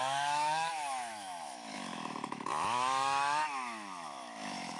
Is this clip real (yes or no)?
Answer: no